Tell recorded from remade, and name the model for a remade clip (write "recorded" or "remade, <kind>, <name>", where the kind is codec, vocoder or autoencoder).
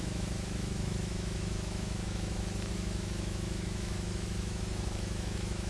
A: remade, autoencoder, DAC-VAE